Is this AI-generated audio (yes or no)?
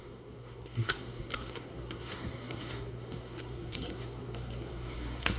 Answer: yes